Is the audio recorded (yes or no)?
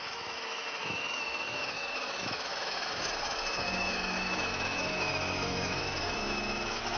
no